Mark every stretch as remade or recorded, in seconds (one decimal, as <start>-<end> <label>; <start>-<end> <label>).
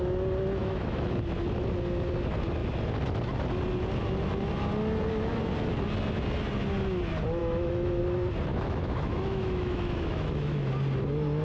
0.0-0.6 recorded; 0.6-1.2 remade; 1.2-7.4 recorded; 7.4-8.0 remade; 8.0-8.5 recorded; 8.5-10.7 remade; 10.7-11.4 recorded